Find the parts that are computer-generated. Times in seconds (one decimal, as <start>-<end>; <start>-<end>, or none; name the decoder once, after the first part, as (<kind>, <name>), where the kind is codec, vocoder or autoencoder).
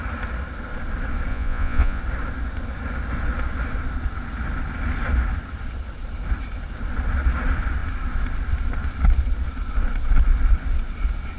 1.3-2.0 (vocoder, Vocos)